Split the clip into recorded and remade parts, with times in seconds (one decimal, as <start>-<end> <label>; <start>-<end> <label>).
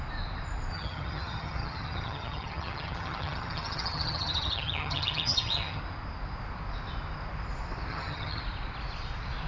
0.0-0.7 recorded; 0.7-5.8 remade; 5.8-7.9 recorded; 7.9-8.4 remade; 8.4-9.5 recorded